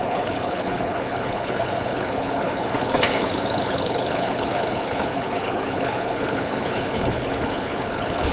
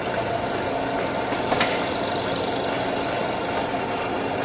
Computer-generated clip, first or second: first